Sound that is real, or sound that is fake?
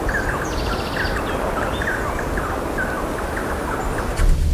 real